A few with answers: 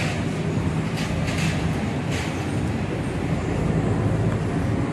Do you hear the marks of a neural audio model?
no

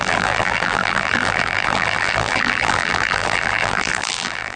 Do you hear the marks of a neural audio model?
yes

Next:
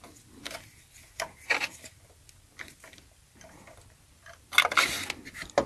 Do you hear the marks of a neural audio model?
no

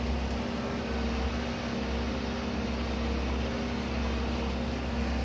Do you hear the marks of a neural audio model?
no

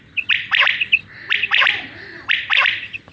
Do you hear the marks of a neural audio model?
yes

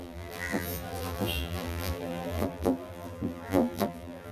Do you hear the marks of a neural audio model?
yes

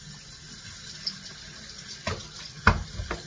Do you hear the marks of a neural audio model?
yes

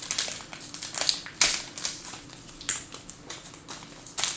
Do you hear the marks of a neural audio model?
no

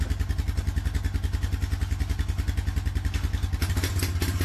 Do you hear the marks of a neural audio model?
no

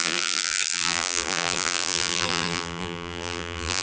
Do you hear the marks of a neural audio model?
yes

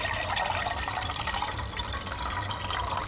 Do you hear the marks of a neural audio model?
yes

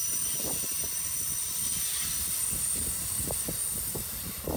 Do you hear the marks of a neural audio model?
yes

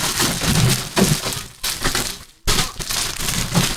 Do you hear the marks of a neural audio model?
no